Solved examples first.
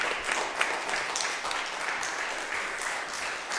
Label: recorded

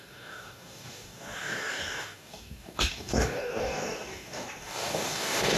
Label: remade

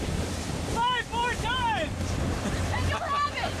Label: remade